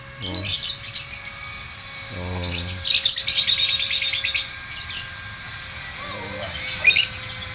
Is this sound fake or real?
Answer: real